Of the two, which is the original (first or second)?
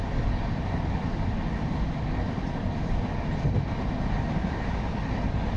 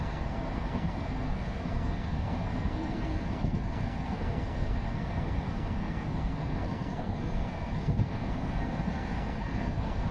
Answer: first